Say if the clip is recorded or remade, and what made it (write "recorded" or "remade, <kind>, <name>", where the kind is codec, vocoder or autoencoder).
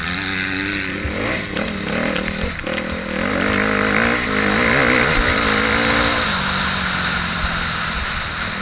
recorded